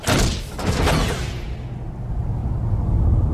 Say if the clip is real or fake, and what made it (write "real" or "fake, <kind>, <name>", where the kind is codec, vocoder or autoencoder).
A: real